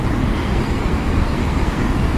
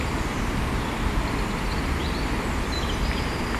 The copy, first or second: first